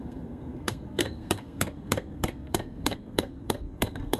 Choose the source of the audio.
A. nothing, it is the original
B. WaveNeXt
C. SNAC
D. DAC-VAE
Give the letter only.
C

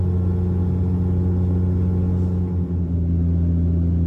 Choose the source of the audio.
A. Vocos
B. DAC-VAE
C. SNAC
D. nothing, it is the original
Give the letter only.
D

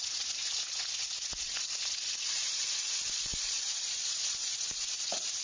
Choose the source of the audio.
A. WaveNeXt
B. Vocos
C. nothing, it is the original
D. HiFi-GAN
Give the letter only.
B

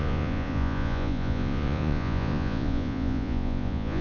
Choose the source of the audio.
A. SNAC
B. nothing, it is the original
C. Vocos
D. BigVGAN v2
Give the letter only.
C